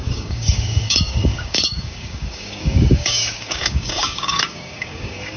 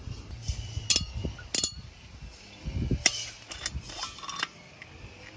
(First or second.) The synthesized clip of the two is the first